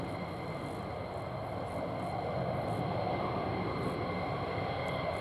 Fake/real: real